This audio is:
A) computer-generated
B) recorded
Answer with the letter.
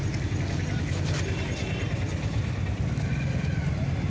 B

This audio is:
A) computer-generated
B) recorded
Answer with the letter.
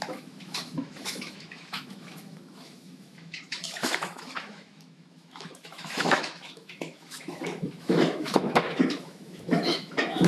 A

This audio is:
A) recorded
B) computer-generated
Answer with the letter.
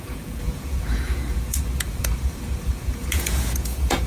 B